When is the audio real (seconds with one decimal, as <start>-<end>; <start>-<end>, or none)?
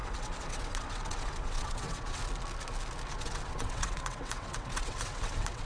2.2-3.1